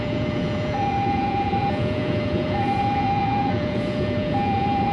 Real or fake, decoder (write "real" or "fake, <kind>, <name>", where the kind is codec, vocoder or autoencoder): fake, vocoder, Vocos